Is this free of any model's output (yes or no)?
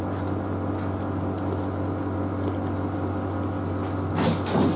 yes